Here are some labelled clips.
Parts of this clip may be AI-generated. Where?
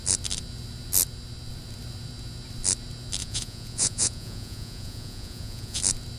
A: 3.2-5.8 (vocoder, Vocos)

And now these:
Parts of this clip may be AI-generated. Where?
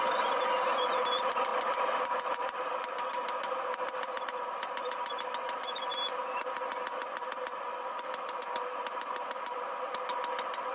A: 0.0-5.9 (vocoder, BigVGAN v2); 8.4-10.1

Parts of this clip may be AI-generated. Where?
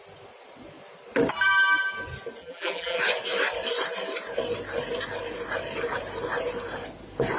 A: 2.4-3.0 (vocoder, BigVGAN v2)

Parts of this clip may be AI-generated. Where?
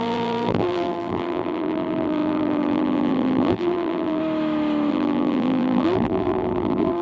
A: 0.0-4.2 (vocoder, BigVGAN v2); 4.9-7.0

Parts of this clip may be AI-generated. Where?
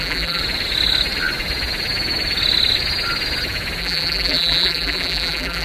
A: 0.0-0.4 (vocoder, BigVGAN v2); 3.8-5.6